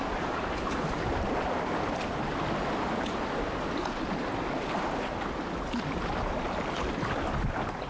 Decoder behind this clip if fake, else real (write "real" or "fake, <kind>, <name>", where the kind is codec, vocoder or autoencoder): real